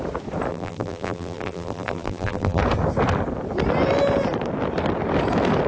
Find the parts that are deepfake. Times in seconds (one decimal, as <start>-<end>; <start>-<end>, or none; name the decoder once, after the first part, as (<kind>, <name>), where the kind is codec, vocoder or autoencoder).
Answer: 0.5-2.6 (vocoder, BigVGAN v2)